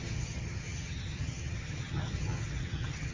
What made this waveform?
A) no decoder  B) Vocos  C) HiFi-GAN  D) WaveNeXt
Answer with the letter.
C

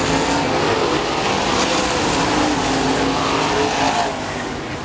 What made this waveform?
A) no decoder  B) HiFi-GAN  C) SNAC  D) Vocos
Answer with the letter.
A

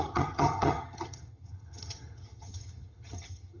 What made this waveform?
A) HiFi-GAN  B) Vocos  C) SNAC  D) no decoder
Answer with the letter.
A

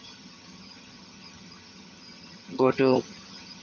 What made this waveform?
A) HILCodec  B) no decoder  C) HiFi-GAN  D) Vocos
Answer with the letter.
C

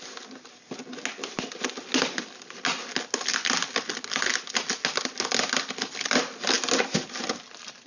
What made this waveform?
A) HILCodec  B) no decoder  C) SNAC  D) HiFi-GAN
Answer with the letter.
B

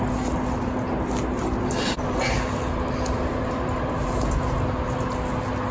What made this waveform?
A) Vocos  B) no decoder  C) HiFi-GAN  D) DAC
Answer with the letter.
B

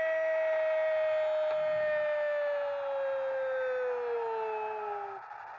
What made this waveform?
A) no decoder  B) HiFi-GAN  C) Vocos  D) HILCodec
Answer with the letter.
A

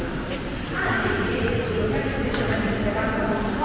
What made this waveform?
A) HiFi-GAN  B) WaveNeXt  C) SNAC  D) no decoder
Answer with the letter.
D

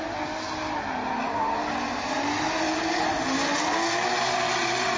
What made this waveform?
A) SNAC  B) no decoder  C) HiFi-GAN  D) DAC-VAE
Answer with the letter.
B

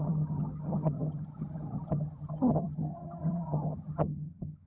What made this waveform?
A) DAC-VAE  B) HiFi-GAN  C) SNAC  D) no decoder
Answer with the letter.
B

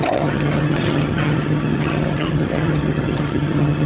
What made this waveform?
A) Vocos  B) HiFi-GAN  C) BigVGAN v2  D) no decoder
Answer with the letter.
B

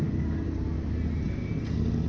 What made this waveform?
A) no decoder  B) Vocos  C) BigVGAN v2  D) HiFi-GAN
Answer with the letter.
A